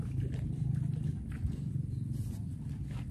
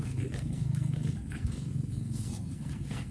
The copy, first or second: second